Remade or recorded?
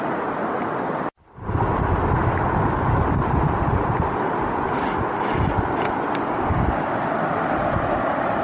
recorded